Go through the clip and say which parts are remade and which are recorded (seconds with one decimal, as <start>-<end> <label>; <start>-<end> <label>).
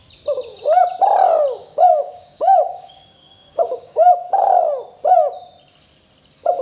0.0-1.6 recorded; 1.6-4.1 remade; 4.1-6.6 recorded